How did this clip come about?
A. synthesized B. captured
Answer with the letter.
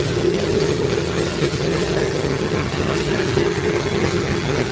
A